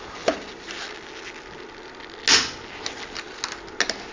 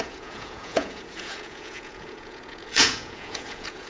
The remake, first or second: second